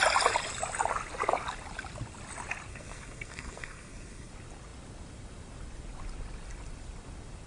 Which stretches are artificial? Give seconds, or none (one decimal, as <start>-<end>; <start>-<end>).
2.7-4.3